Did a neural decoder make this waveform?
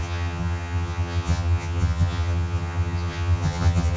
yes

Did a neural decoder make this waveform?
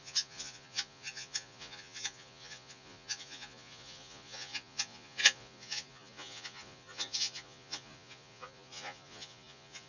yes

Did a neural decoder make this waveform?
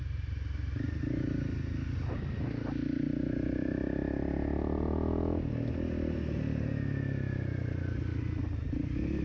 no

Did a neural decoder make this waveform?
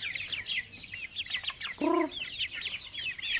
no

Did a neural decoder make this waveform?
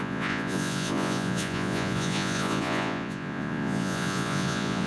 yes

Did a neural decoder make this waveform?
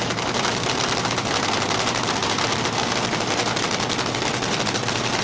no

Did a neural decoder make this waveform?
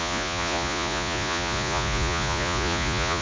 yes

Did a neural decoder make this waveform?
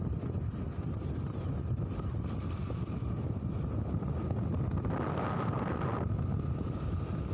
no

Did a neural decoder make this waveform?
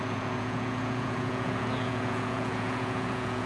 yes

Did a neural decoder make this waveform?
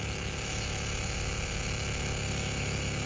yes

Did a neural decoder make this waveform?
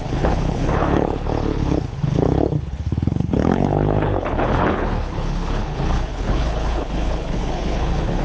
yes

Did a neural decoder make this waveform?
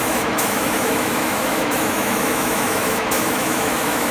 yes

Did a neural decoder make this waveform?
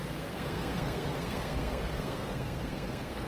yes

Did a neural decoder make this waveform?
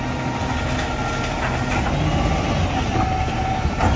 no